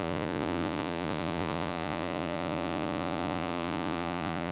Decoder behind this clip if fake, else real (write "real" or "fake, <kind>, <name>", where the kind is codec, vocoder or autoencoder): fake, vocoder, Vocos